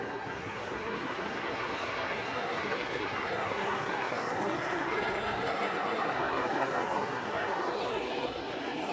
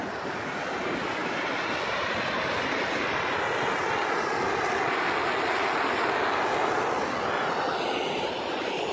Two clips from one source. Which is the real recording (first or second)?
second